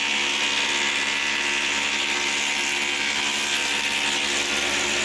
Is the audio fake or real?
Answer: real